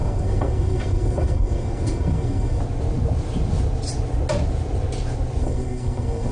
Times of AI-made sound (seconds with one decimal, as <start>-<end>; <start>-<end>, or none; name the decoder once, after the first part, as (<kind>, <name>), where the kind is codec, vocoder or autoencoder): 0.0-2.6 (codec, SNAC); 5.4-6.3